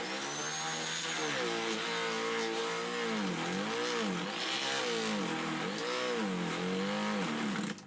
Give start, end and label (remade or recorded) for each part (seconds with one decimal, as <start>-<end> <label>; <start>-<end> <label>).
0.0-7.9 recorded